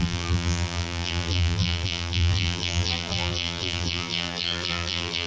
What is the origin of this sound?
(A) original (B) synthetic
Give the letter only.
B